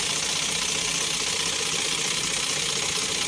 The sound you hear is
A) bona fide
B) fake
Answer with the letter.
A